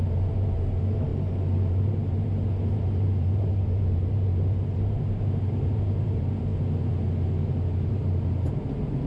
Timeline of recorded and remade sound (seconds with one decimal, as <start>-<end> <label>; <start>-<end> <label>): 0.0-6.5 remade; 6.5-7.9 recorded; 7.9-9.1 remade